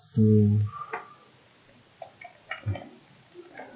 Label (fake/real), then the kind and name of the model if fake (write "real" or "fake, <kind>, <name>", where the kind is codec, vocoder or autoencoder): real